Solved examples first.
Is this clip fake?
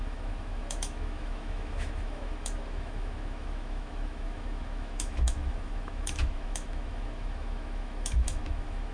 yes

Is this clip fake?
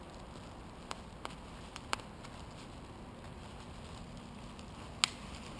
no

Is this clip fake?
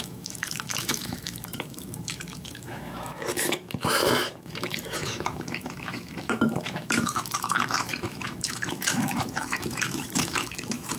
yes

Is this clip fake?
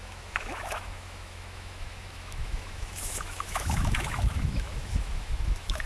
yes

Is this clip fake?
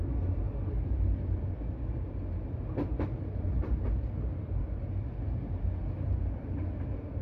no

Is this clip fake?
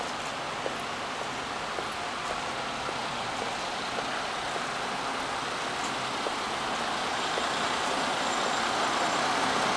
no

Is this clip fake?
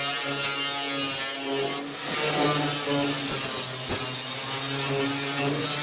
no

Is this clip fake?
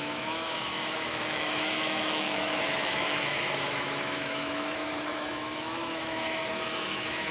yes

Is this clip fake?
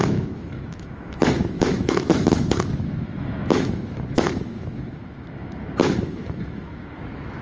yes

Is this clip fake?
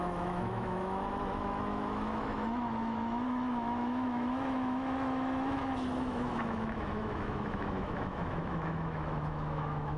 yes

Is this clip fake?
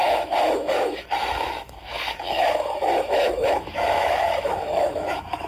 yes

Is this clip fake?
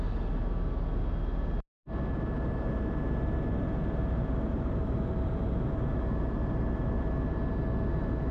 no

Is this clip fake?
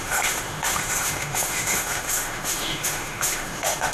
yes